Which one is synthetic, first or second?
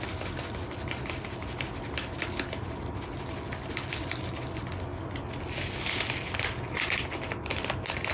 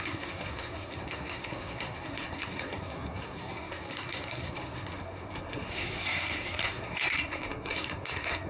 second